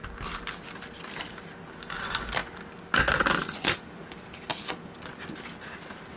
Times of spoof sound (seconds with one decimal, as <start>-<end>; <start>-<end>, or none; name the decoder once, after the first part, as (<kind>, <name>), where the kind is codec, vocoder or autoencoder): none